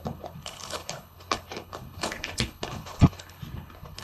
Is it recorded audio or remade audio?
remade